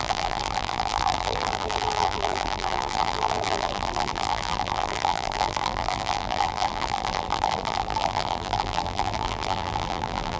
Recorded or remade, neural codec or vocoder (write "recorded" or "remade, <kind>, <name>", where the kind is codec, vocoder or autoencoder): remade, vocoder, BigVGAN v2